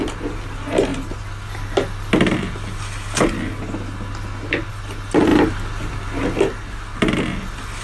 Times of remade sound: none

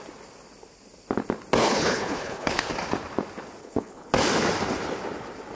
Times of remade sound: 1.6-2.7 (codec, HILCodec); 3.6-4.1

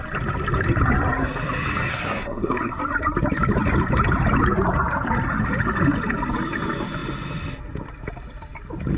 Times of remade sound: 1.9-2.8 (codec, SNAC)

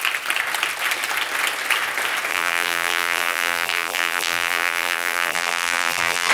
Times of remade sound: 2.3-6.3 (vocoder, BigVGAN v2)

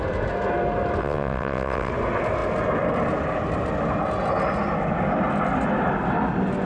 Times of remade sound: 1.0-1.9 (vocoder, WaveNeXt)

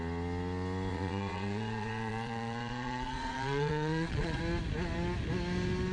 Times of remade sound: 0.9-4.4 (vocoder, Vocos)

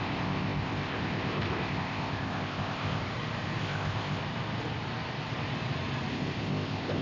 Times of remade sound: 0.0-3.0 (codec, ZipCodec); 3.6-4.2; 6.1-7.0